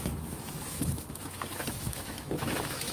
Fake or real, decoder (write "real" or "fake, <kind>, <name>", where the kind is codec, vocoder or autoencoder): fake, autoencoder, DAC-VAE